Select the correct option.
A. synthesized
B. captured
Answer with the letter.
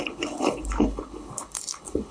A